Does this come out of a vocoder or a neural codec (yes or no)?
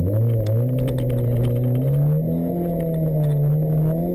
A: no